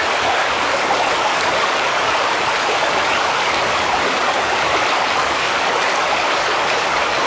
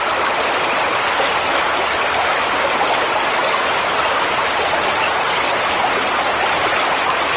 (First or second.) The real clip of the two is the second